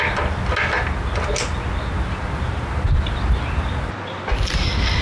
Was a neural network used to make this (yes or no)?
no